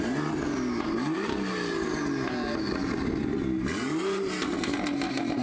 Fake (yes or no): no